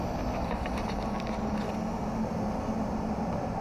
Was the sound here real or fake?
real